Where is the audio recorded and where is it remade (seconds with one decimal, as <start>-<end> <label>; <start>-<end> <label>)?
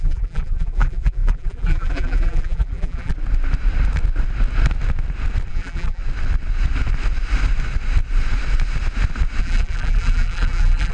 0.0-3.1 remade; 3.1-5.5 recorded; 5.5-6.0 remade; 6.0-9.4 recorded; 9.4-10.9 remade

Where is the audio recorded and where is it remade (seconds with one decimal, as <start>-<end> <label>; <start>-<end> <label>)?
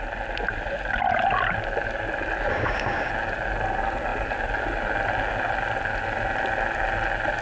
0.0-2.5 recorded; 2.5-3.1 remade; 3.1-7.4 recorded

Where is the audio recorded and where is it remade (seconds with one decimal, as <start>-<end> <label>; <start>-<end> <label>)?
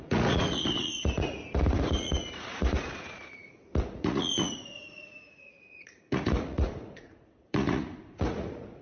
0.0-8.8 remade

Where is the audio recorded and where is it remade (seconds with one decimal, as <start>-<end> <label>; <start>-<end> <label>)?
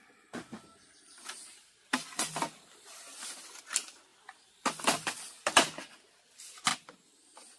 0.0-7.6 recorded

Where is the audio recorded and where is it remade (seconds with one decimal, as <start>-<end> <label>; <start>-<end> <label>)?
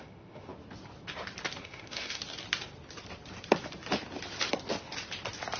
0.0-0.5 remade; 0.5-1.6 recorded; 1.6-2.2 remade; 2.2-5.6 recorded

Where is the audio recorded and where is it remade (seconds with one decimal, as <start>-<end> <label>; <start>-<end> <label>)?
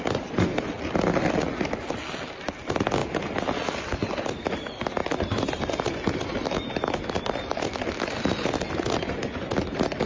0.0-10.1 recorded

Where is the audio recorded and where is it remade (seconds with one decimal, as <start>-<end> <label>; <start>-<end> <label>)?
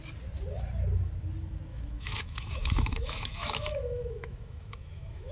0.0-1.7 recorded; 1.7-5.3 remade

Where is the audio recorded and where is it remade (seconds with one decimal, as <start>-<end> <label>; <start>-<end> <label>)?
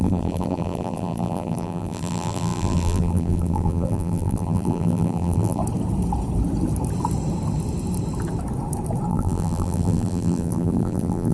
0.0-5.6 remade; 5.6-9.1 recorded; 9.1-11.3 remade